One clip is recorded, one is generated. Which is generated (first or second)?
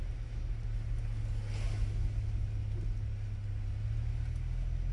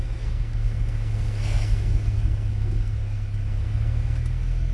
second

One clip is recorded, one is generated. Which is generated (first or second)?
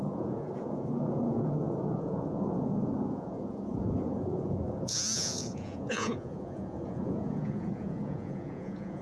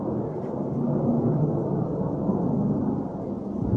first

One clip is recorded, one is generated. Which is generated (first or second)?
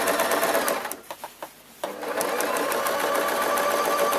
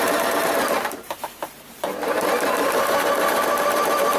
second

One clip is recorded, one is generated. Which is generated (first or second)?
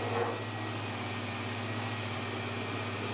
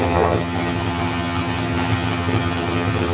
second